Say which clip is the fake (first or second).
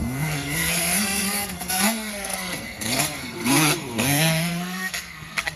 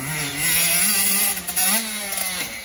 first